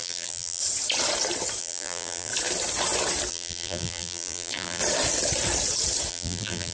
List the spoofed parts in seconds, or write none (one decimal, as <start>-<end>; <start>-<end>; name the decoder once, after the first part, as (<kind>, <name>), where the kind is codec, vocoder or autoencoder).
0.0-0.6 (vocoder, BigVGAN v2); 1.6-2.3; 3.3-4.8; 6.1-6.7